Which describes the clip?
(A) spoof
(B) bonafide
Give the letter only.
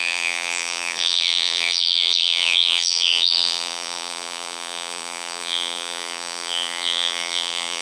A